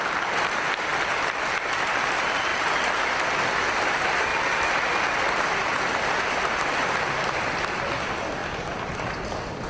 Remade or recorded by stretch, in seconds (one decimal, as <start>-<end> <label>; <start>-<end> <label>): 0.0-2.5 recorded; 2.5-3.4 remade; 3.4-8.4 recorded; 8.4-9.7 remade